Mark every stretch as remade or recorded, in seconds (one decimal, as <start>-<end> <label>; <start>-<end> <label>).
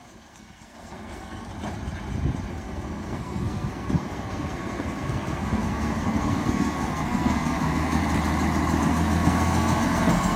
0.0-1.5 remade; 1.5-2.5 recorded; 2.5-8.0 remade; 8.0-8.8 recorded; 8.8-10.4 remade